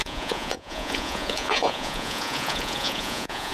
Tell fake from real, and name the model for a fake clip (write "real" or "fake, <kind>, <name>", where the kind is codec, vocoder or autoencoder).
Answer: fake, vocoder, Vocos